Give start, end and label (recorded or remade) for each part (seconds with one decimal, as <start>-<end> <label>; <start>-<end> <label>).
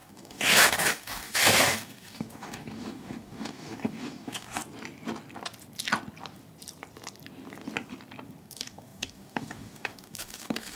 0.0-4.6 remade; 4.6-8.4 recorded; 8.4-10.8 remade